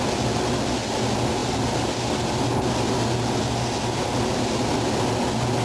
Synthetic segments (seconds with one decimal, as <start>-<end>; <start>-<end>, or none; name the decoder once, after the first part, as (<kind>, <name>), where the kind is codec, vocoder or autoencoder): none